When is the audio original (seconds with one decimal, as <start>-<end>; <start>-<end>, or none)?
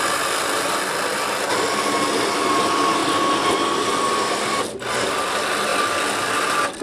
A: 0.0-6.8